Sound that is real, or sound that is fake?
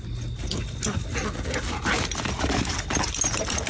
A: real